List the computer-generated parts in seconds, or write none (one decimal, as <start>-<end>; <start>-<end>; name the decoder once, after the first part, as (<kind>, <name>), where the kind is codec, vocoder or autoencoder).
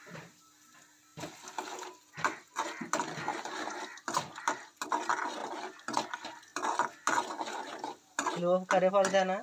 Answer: 3.3-3.8 (vocoder, BigVGAN v2)